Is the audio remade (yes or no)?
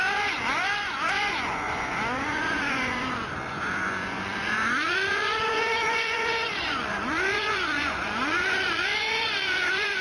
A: yes